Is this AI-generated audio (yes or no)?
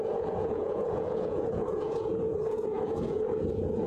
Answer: yes